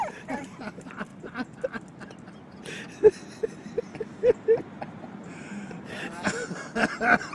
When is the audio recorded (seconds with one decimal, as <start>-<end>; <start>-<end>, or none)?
1.1-2.6